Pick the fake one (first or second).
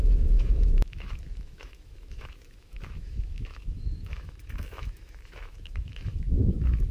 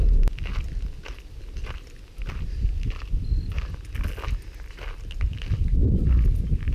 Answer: first